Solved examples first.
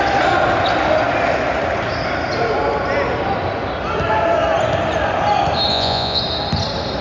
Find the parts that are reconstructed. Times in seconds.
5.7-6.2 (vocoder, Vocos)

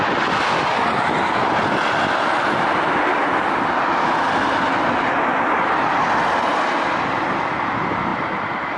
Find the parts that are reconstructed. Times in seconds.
8.1-8.8 (vocoder, BigVGAN v2)

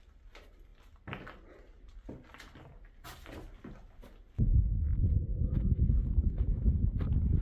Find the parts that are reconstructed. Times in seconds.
5.4-6.8 (autoencoder, DAC-VAE)

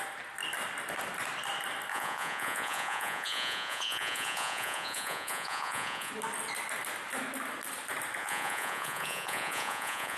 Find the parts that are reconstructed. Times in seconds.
1.9-6.1 (vocoder, Vocos); 8.2-10.2

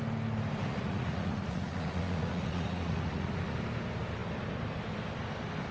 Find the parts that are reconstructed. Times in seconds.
0.7-3.4 (vocoder, Vocos)